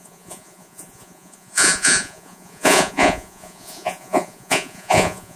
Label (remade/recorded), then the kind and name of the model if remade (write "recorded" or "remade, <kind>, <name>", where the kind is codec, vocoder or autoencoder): remade, vocoder, Vocos